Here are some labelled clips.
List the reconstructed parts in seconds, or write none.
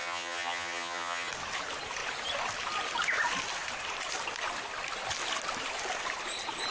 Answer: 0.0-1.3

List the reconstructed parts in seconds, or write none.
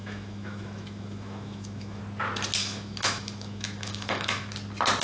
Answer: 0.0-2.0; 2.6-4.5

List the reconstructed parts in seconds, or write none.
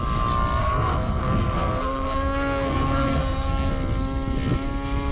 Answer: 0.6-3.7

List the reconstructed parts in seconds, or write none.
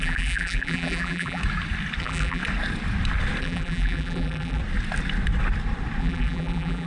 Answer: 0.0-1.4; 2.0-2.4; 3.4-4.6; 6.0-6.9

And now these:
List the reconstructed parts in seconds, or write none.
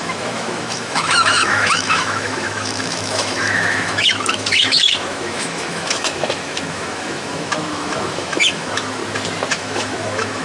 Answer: 0.0-9.0; 9.5-10.4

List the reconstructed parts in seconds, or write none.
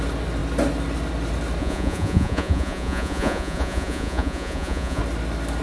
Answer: 1.6-5.0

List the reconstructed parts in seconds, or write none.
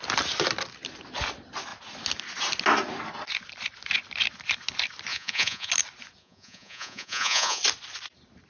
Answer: 5.1-5.7; 6.2-7.6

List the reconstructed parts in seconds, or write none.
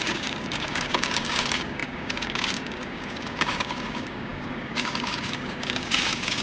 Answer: 0.0-6.4